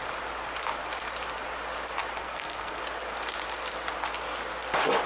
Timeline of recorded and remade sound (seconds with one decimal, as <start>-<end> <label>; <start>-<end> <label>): 0.0-2.2 recorded; 2.2-2.8 remade; 2.8-5.1 recorded